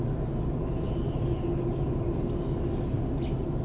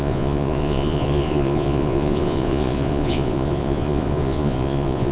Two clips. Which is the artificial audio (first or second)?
second